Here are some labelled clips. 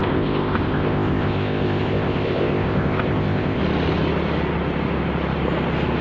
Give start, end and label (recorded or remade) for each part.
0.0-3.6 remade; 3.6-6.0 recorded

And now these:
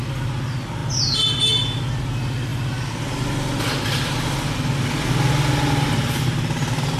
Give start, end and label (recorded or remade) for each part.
0.0-7.0 recorded

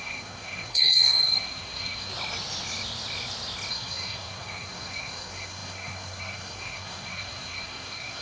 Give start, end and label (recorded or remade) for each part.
0.0-2.1 remade; 2.1-3.7 recorded; 3.7-8.2 remade

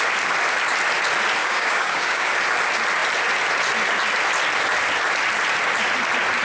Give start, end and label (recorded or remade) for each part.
0.0-1.4 recorded; 1.4-2.3 remade; 2.3-6.4 recorded

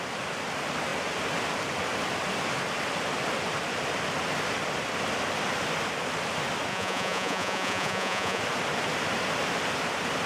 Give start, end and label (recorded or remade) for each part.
0.0-6.7 recorded; 6.7-8.4 remade; 8.4-10.3 recorded

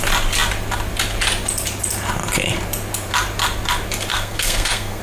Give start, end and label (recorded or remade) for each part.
0.0-4.1 recorded; 4.1-5.0 remade

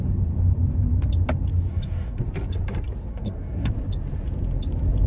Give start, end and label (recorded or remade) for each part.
0.0-1.7 recorded; 1.7-2.2 remade; 2.2-3.1 recorded; 3.1-3.7 remade; 3.7-5.1 recorded

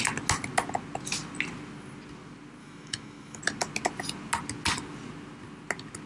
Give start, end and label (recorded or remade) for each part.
0.0-2.6 recorded; 2.6-3.4 remade; 3.4-6.1 recorded